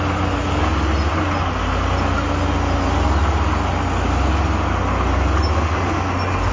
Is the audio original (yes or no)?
yes